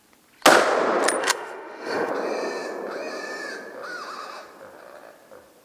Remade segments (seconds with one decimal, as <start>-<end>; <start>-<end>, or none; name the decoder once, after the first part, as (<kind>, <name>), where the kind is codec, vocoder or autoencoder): 1.2-2.1 (autoencoder, DAC-VAE)